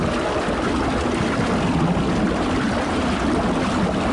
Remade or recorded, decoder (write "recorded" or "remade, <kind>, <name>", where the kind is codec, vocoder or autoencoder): recorded